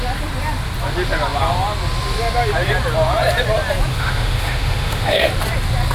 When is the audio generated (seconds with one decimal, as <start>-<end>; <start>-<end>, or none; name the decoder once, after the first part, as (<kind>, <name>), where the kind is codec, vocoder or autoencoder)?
3.9-5.3 (autoencoder, DAC-VAE)